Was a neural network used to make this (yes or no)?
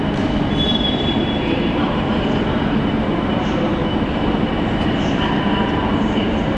yes